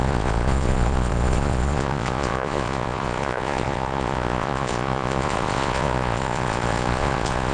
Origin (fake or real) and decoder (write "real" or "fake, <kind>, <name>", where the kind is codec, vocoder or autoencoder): fake, vocoder, Vocos